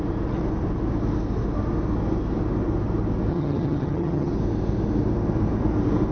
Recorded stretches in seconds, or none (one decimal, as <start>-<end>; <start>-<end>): 0.0-3.3; 4.3-6.1